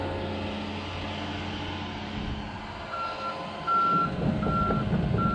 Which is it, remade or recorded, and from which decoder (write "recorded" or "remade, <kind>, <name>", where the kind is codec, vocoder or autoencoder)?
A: recorded